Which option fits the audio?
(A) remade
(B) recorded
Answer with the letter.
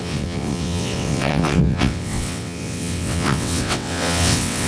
A